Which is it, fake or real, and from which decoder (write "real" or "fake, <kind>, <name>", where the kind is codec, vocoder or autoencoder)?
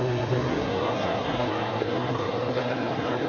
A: fake, codec, SNAC